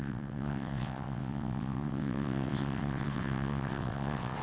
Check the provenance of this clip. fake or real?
fake